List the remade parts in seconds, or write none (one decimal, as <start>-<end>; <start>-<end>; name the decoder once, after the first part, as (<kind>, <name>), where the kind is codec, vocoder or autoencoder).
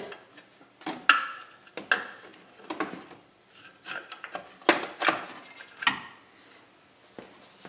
none